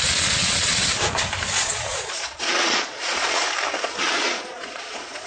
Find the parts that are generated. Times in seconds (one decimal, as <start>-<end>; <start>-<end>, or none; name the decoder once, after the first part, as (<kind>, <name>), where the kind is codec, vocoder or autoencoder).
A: 0.0-0.8 (vocoder, Vocos); 1.6-3.4; 4.0-5.3